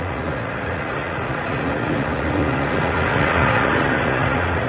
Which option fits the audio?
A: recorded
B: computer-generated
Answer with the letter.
B